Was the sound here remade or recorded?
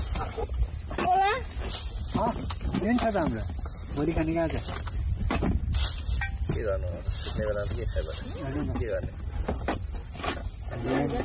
recorded